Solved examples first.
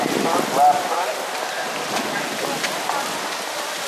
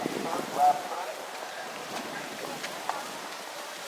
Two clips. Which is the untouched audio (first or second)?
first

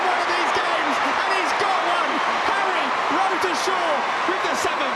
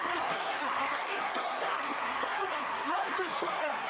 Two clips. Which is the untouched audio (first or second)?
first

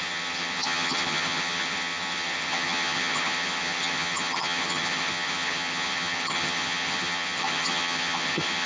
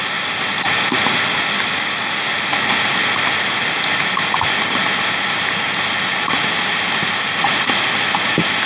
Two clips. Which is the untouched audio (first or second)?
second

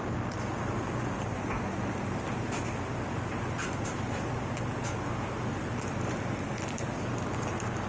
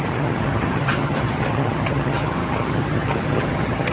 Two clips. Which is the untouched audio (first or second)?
first